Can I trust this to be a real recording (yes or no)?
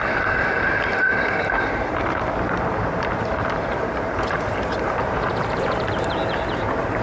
no